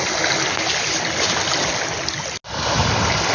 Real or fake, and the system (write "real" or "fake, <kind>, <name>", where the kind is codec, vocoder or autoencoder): real